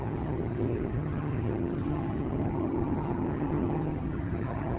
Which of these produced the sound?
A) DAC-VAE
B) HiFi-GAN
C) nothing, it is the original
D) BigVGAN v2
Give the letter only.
B